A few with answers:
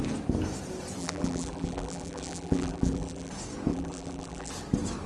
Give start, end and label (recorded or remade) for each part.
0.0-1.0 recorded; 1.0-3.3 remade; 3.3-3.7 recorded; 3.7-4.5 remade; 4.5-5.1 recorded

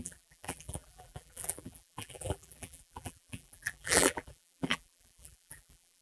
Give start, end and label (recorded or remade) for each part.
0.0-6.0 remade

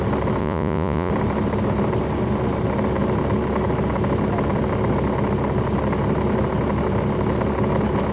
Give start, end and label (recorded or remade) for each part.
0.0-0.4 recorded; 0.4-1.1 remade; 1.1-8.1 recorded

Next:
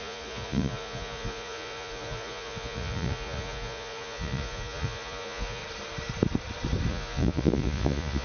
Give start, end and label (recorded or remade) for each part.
0.0-5.6 remade; 5.6-6.9 recorded; 6.9-8.2 remade

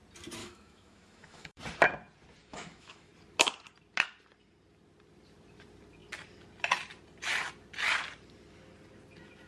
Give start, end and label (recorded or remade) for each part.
0.0-0.4 recorded; 0.4-1.6 remade; 1.6-2.4 recorded; 2.4-3.1 remade; 3.1-9.5 recorded

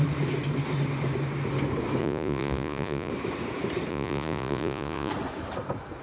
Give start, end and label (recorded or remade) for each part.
0.0-2.0 recorded; 2.0-3.1 remade; 3.1-3.9 recorded; 3.9-5.1 remade; 5.1-6.0 recorded

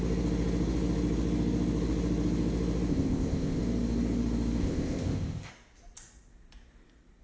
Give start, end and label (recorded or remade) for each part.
0.0-2.9 recorded; 2.9-3.6 remade; 3.6-4.6 recorded; 4.6-5.5 remade; 5.5-7.2 recorded